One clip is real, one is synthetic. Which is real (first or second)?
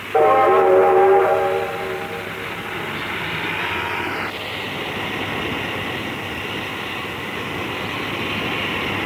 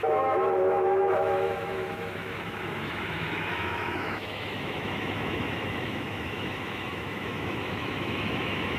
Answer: first